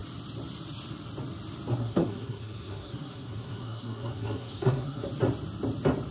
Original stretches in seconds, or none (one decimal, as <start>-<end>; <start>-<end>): 0.0-1.8; 5.1-6.1